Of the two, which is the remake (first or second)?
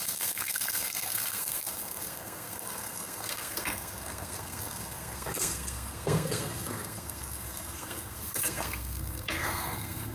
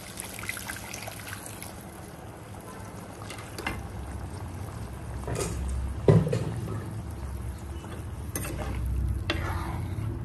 first